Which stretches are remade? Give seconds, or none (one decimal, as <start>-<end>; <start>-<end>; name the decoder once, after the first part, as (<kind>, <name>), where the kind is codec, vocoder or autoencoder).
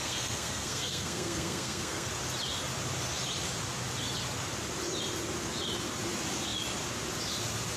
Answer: 0.0-2.1 (codec, SNAC)